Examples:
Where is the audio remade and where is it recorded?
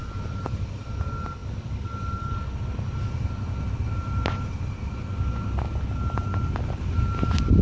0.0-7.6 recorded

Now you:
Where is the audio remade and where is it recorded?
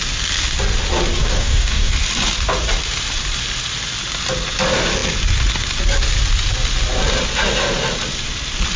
0.0-1.2 recorded; 1.2-1.9 remade; 1.9-8.8 recorded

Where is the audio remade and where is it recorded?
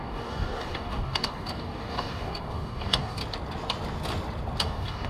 0.0-3.2 remade; 3.2-4.6 recorded; 4.6-5.1 remade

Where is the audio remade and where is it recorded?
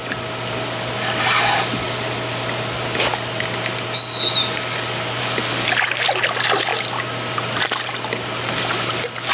0.0-9.3 recorded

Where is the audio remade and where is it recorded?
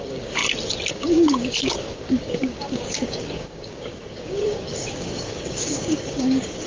0.0-0.4 remade; 0.4-0.9 recorded; 0.9-6.7 remade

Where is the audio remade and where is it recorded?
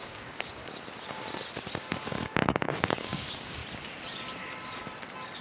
0.0-0.6 remade; 0.6-1.8 recorded; 1.8-3.6 remade; 3.6-5.4 recorded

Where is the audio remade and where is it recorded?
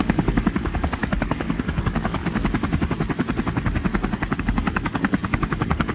0.0-2.2 remade; 2.2-4.4 recorded; 4.4-5.9 remade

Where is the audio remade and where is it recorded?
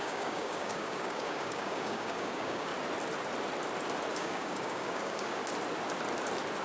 0.0-2.7 remade; 2.7-4.1 recorded; 4.1-5.4 remade; 5.4-6.6 recorded